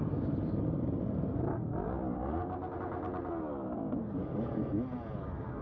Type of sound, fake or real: real